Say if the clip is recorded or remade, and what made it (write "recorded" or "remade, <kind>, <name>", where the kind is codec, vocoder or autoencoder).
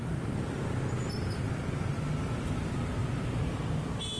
recorded